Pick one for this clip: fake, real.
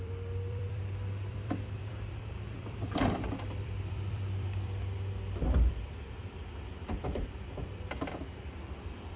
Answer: fake